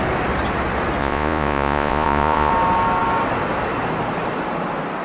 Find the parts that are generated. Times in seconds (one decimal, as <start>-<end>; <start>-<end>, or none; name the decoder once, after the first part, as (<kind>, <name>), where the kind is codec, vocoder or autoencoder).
1.0-2.5 (vocoder, Vocos)